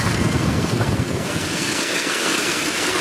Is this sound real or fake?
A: fake